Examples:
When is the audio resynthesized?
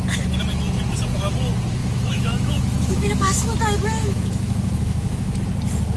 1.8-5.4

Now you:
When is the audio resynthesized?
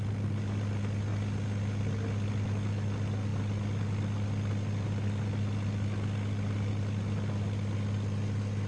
0.0-1.1; 2.7-8.7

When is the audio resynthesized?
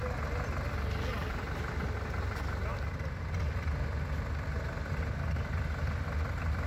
1.1-1.7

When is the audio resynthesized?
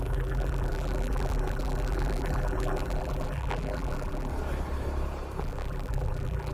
0.0-4.3; 5.4-6.5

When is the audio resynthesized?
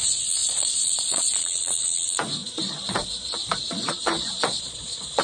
0.0-5.2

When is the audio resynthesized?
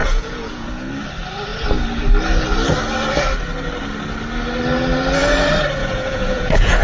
0.0-0.9; 5.8-6.8